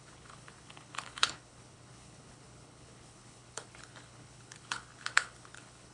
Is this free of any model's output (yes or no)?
no